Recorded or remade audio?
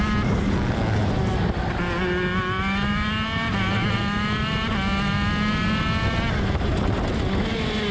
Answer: recorded